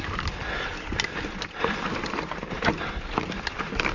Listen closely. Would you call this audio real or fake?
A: fake